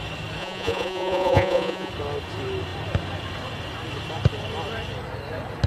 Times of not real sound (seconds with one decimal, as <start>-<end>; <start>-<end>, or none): 0.4-1.9